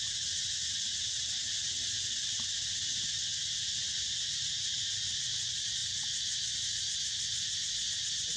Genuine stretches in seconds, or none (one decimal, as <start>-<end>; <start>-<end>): 0.0-8.4